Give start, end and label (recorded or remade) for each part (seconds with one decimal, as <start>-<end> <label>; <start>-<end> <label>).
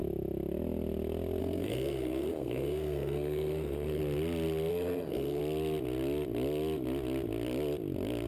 0.0-1.4 recorded; 1.4-4.0 remade; 4.0-4.7 recorded; 4.7-5.4 remade; 5.4-8.3 recorded